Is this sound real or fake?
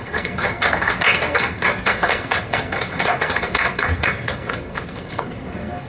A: fake